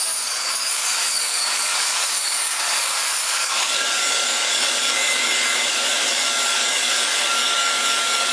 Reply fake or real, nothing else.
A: fake